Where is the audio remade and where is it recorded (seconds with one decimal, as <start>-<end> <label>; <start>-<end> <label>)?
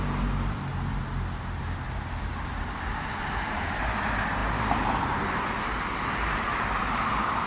0.0-1.0 remade; 1.0-1.6 recorded; 1.6-7.5 remade